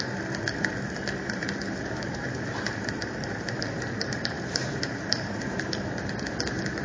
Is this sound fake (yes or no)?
yes